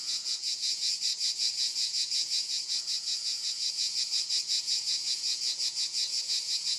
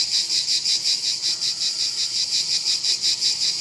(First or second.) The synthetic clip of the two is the first